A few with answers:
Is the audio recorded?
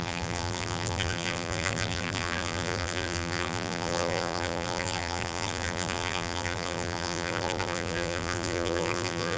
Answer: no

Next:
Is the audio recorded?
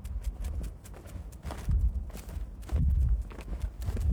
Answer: yes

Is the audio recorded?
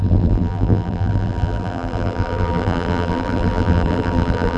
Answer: no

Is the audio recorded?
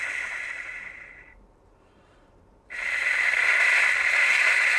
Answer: no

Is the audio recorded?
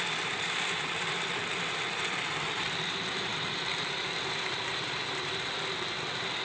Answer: no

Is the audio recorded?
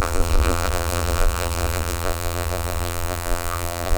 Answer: no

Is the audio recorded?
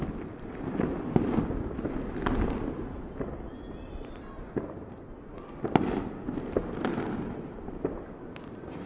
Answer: yes